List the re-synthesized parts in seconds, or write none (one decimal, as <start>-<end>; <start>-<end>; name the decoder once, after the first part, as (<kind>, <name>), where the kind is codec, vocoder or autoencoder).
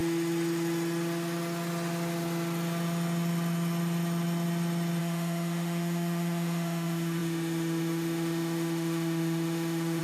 5.0-10.0 (autoencoder, DAC-VAE)